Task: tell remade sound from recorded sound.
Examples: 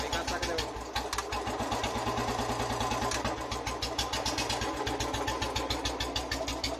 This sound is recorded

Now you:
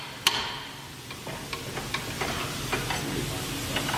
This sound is recorded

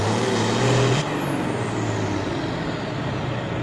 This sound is recorded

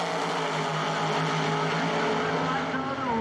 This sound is recorded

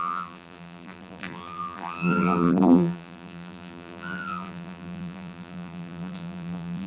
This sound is remade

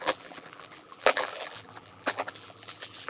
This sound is remade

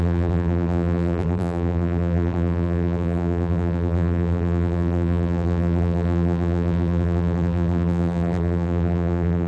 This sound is remade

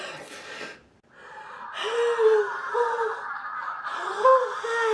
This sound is recorded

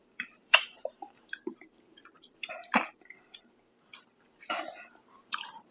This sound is remade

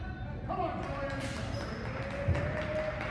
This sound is recorded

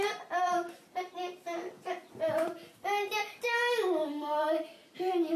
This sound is recorded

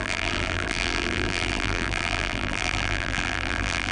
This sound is remade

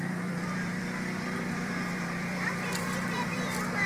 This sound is remade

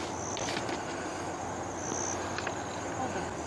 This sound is recorded